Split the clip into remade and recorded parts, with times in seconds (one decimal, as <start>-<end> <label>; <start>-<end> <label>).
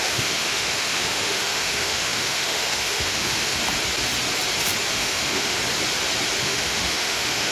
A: 0.0-3.6 remade; 3.6-4.9 recorded; 4.9-5.6 remade; 5.6-6.4 recorded; 6.4-7.5 remade